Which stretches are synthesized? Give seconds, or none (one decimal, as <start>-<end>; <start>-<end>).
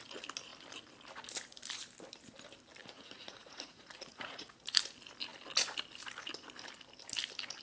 2.8-4.8